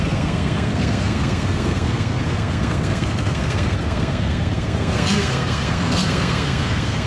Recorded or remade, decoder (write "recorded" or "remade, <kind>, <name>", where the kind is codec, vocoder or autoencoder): remade, codec, SNAC